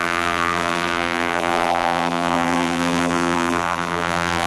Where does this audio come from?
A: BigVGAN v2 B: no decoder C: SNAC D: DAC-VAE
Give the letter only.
A